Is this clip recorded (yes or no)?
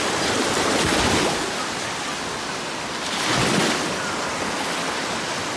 yes